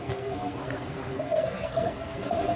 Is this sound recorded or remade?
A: remade